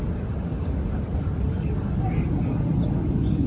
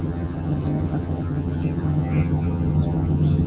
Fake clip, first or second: second